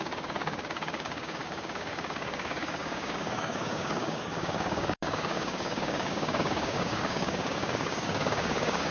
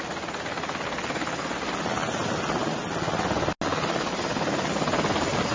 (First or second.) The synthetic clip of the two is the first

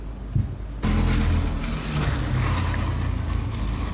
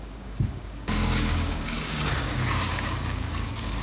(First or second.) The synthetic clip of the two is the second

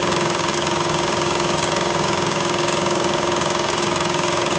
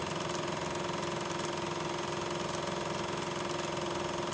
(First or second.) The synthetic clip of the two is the first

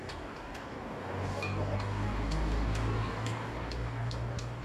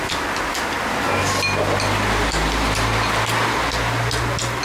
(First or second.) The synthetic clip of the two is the first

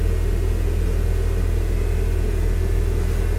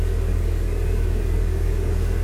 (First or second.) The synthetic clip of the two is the second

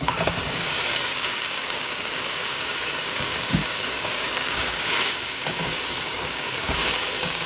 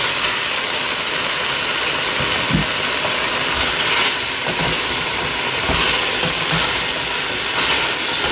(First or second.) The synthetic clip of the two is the first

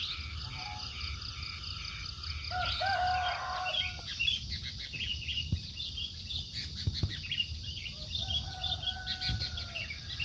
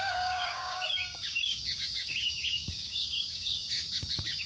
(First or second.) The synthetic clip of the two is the second